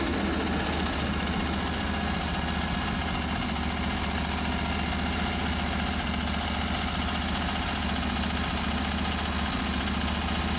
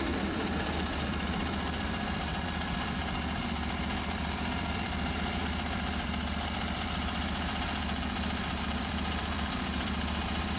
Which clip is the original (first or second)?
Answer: first